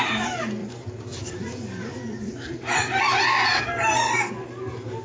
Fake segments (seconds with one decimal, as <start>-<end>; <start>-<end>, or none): 0.6-3.6